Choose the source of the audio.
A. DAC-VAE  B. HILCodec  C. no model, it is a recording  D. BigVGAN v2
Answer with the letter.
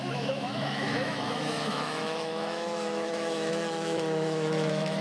A